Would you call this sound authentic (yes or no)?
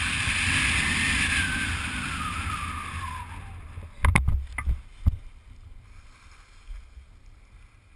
yes